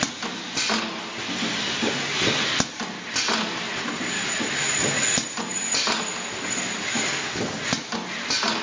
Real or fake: real